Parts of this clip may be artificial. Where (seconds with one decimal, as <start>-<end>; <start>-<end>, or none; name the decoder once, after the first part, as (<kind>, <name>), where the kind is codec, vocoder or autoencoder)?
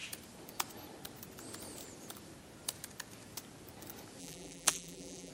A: 4.2-5.3 (vocoder, BigVGAN v2)